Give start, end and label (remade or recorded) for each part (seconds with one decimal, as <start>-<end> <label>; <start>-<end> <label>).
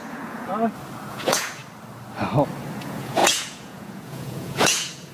0.0-0.5 remade; 0.5-1.1 recorded; 1.1-1.6 remade; 1.6-2.8 recorded; 2.8-5.1 remade